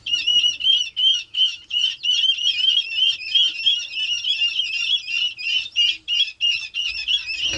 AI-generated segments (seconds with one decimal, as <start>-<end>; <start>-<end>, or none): 1.0-1.6